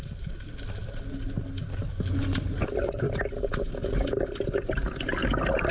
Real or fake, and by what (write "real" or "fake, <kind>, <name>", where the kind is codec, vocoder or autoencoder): real